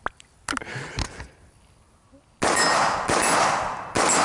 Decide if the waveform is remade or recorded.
recorded